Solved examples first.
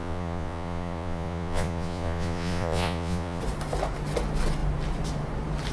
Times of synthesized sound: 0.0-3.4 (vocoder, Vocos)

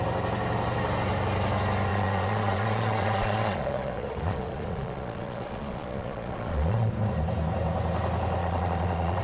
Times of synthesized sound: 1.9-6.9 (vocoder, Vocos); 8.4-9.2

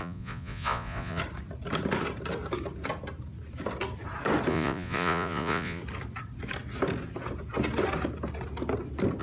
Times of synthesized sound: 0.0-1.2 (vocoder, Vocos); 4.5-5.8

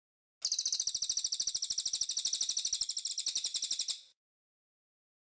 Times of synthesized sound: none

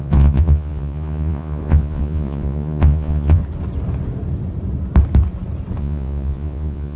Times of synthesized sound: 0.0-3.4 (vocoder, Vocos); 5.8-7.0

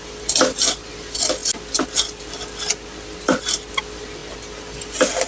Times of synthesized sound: none

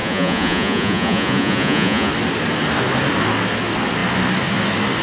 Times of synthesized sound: 0.0-2.1 (vocoder, Vocos)

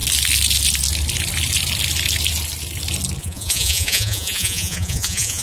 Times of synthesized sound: 3.2-5.4 (vocoder, Vocos)